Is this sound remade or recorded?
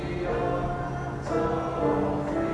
recorded